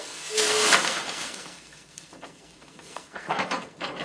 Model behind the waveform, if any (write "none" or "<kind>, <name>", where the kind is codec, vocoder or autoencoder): codec, SNAC